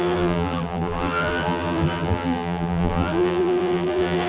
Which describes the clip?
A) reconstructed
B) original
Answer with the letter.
A